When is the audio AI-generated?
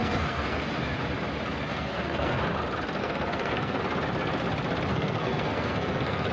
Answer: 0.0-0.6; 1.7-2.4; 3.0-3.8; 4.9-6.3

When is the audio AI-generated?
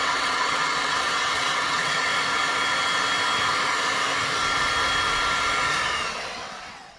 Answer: 0.0-2.1; 6.1-7.0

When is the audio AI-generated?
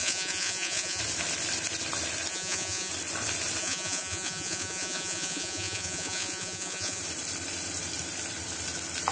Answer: 0.0-1.0; 2.3-2.9; 3.6-7.0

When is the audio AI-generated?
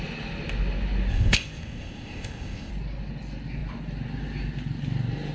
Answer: 1.1-2.7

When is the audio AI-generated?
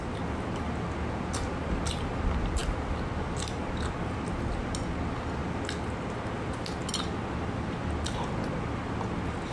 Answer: none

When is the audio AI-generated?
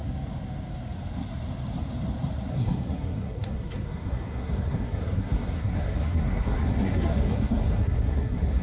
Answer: 2.5-8.6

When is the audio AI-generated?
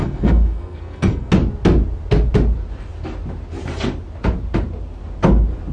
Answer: 0.0-1.3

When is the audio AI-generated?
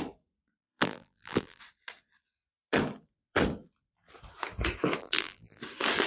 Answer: 0.6-1.6; 5.0-5.6